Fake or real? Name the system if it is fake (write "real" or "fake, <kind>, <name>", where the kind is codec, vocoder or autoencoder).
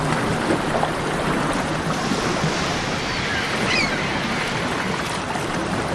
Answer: real